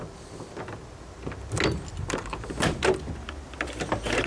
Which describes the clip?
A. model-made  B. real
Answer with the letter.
B